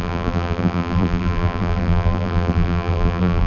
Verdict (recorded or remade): remade